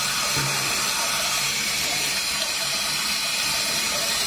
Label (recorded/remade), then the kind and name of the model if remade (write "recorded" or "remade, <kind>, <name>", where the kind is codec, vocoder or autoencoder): remade, vocoder, BigVGAN v2